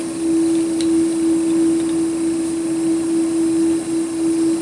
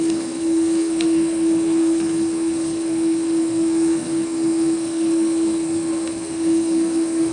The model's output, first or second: second